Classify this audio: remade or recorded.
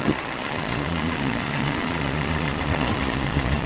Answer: remade